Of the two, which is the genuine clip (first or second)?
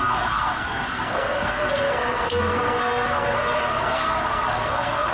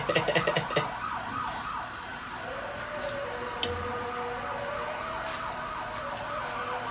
second